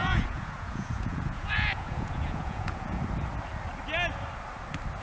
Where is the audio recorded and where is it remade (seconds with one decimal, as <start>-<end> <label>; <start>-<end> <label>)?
0.0-3.0 remade; 3.0-5.0 recorded